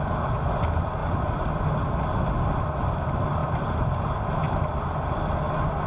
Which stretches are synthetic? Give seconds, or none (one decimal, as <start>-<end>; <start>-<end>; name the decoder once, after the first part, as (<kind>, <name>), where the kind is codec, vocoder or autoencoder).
1.0-1.5 (vocoder, BigVGAN v2); 3.4-4.5